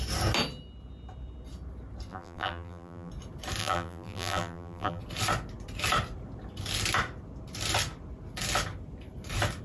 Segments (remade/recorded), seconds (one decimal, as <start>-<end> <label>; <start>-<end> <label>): 0.0-2.1 recorded; 2.1-3.1 remade; 3.1-3.6 recorded; 3.6-5.0 remade; 5.0-9.6 recorded